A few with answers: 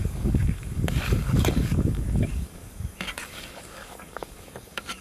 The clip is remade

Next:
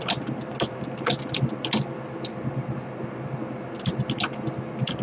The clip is recorded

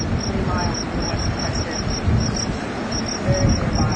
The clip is recorded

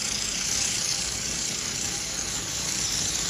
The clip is remade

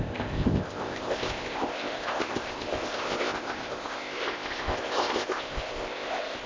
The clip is remade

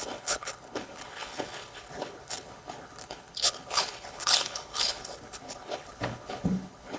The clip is remade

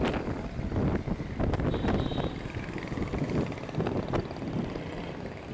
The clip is recorded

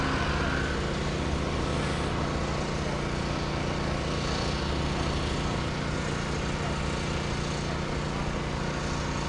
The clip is recorded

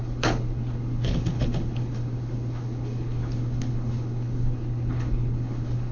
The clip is remade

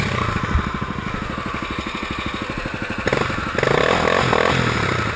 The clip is recorded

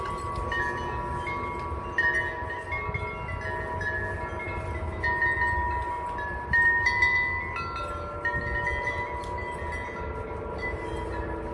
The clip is recorded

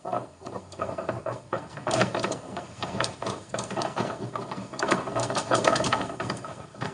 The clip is remade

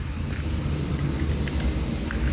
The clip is recorded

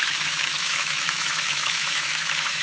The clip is remade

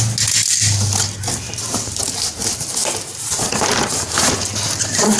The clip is recorded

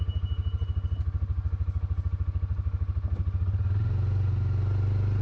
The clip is recorded